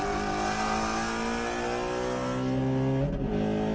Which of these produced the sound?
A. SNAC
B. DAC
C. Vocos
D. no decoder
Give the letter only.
D